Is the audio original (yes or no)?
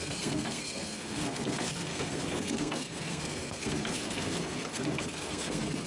no